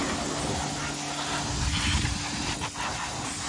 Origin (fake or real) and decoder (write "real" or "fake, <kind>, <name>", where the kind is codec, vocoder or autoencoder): real